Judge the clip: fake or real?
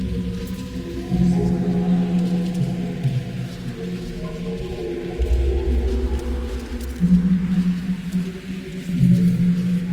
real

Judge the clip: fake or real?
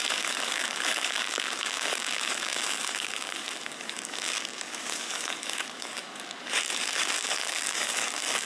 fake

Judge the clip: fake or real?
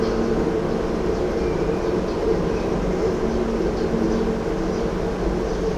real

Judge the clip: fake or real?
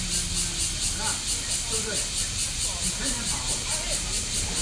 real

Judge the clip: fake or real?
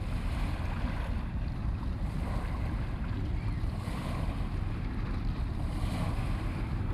fake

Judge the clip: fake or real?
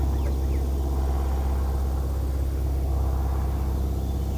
real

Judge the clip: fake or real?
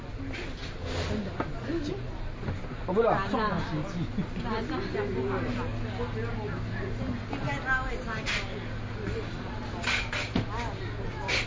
real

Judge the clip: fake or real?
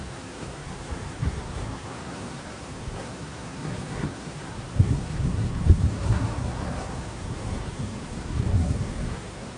fake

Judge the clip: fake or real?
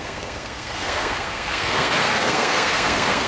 fake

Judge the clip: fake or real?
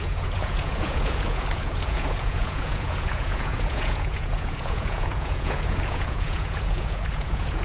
fake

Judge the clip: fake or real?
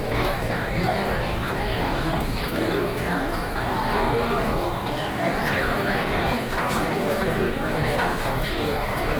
fake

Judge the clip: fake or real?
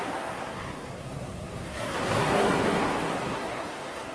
fake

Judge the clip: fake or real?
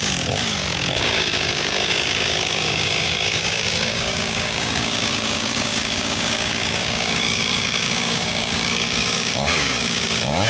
fake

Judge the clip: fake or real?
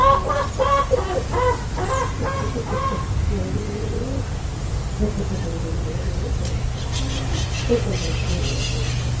real